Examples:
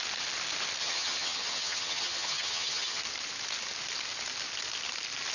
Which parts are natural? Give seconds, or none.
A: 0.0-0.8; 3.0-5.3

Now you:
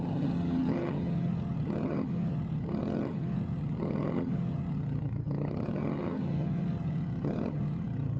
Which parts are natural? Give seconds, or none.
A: none

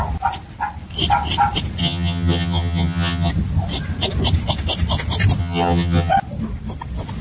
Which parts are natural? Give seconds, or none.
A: 0.0-1.8; 3.3-5.4; 6.1-7.2

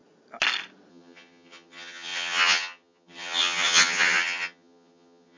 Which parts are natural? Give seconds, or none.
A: 0.0-0.9

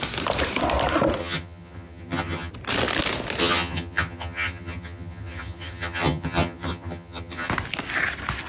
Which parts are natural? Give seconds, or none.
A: 0.0-1.2; 2.5-3.4; 7.5-8.5